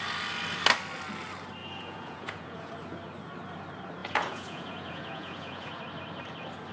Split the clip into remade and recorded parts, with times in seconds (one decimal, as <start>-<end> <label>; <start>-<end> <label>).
0.0-1.6 recorded; 1.6-2.7 remade; 2.7-4.0 recorded; 4.0-5.8 remade; 5.8-6.7 recorded